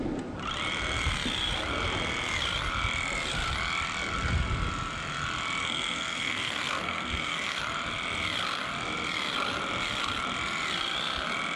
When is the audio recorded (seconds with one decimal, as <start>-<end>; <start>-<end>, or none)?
0.0-5.6; 7.6-11.6